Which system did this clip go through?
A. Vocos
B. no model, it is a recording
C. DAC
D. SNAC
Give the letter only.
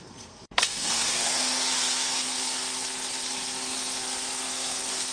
D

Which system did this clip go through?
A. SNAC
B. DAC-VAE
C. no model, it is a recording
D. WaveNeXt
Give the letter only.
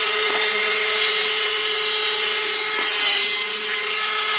D